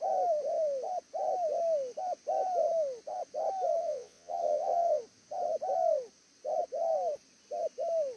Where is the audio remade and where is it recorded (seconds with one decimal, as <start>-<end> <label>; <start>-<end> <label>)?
0.0-3.8 recorded; 3.8-5.0 remade; 5.0-8.2 recorded